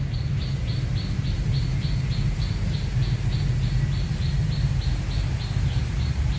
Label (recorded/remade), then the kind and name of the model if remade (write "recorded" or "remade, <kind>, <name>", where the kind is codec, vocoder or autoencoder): recorded